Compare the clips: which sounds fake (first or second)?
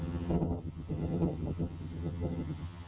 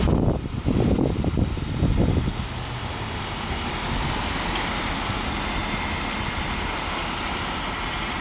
first